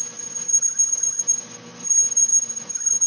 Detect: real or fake real